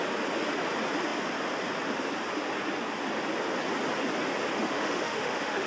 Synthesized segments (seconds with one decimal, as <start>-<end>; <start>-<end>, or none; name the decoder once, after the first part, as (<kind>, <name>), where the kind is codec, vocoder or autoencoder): 4.5-5.7 (autoencoder, DAC-VAE)